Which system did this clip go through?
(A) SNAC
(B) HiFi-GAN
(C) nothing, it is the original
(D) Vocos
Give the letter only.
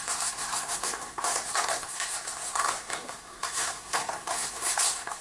A